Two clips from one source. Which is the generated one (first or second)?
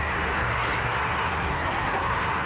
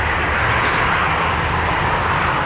first